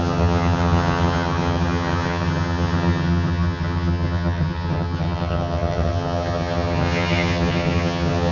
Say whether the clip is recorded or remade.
remade